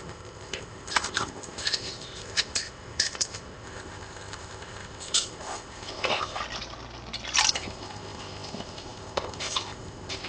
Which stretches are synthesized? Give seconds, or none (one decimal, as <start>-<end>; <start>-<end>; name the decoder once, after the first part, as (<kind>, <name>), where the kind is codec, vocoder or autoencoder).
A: 0.0-6.4 (codec, ZipCodec); 7.5-10.3